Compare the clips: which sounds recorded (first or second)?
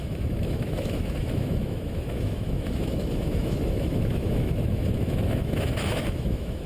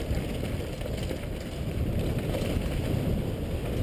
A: second